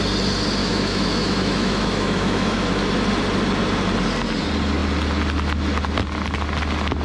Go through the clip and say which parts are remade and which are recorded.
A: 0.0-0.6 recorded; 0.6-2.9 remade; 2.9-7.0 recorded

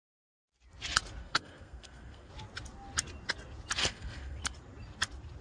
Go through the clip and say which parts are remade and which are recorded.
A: 0.0-1.2 recorded; 1.2-2.3 remade; 2.3-3.8 recorded; 3.8-4.4 remade; 4.4-5.4 recorded

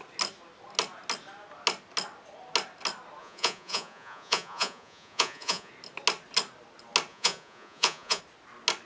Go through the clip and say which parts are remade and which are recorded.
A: 0.0-3.2 recorded; 3.2-5.7 remade; 5.7-7.1 recorded; 7.1-8.2 remade; 8.2-8.9 recorded

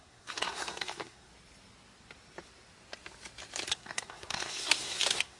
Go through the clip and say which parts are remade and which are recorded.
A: 0.0-1.3 remade; 1.3-3.7 recorded; 3.7-5.4 remade

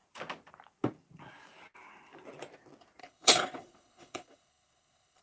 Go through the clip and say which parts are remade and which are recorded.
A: 0.0-3.0 recorded; 3.0-5.2 remade